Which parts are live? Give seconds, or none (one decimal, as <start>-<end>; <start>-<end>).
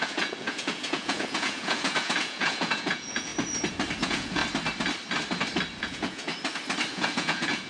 3.3-4.0; 4.4-5.8; 6.3-6.9